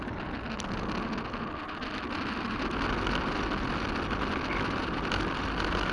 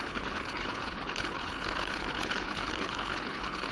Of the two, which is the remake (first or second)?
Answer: second